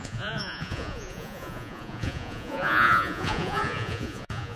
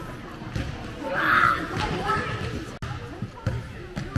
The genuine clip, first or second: second